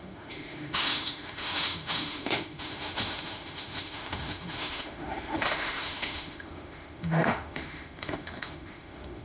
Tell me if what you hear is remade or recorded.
remade